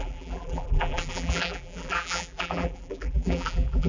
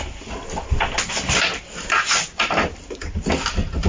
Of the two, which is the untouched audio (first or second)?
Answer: second